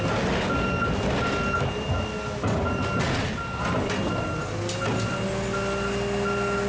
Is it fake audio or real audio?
real